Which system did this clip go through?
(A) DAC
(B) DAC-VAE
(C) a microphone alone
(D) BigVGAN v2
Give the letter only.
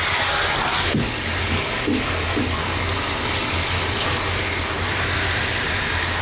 C